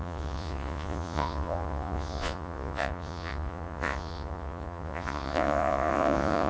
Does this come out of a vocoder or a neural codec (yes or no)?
yes